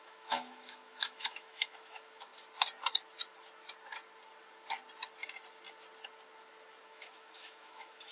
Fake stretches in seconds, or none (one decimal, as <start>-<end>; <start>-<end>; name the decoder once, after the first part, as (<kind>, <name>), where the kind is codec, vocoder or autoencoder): 0.0-2.3 (autoencoder, DAC-VAE); 6.8-8.1